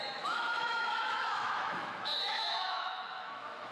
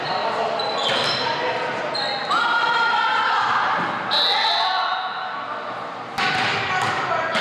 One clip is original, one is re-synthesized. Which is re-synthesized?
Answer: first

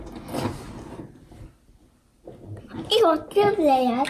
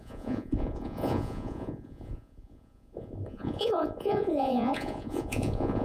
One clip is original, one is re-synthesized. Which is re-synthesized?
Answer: second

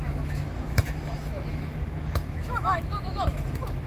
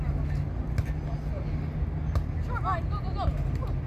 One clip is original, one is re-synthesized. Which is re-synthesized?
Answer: first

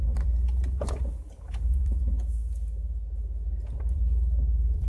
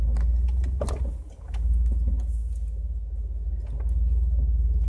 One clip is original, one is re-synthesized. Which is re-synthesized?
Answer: first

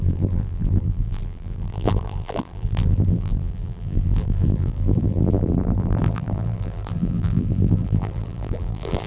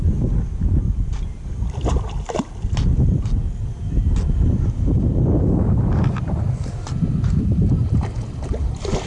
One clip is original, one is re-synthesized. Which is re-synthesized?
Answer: first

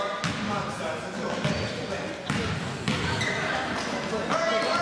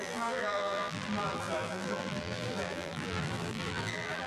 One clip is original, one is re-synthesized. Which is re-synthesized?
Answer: second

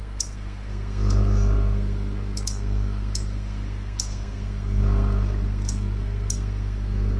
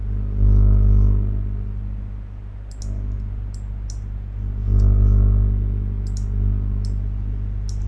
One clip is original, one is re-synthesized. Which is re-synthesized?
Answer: first